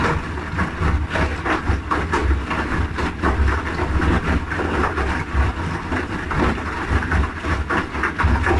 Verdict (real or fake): real